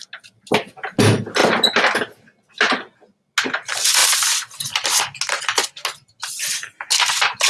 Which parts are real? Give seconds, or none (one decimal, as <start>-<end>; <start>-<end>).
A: 0.0-7.5